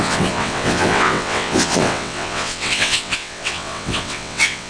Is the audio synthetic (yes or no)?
yes